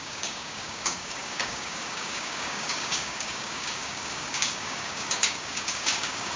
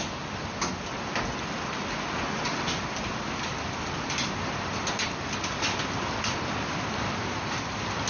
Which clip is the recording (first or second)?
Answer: second